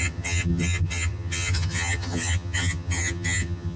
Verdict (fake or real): fake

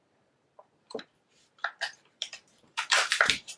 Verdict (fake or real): fake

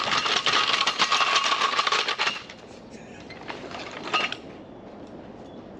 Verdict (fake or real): real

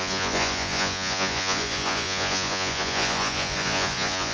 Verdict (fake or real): fake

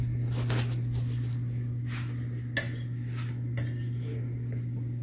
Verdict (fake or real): real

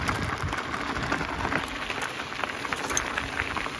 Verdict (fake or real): real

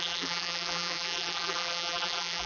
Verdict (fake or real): fake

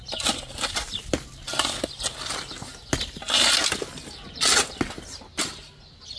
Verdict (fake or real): real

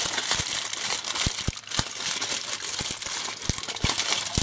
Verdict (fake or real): real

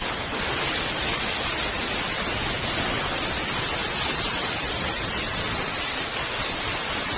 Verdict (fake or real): real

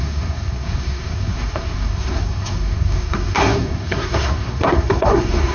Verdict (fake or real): fake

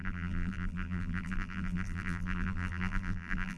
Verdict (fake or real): fake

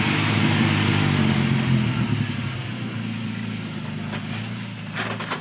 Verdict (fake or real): real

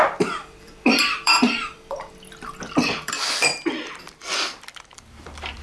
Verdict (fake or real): fake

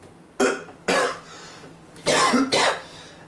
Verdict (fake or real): real